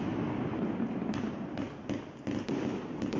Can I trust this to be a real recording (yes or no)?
yes